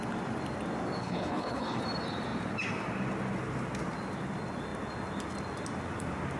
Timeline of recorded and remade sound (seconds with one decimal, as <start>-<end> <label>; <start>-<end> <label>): 0.0-1.0 recorded; 1.0-1.8 remade; 1.8-6.4 recorded